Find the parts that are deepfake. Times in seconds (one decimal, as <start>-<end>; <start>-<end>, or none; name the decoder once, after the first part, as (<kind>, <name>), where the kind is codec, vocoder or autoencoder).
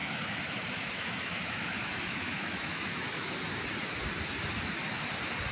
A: 0.0-3.3 (autoencoder, DAC-VAE)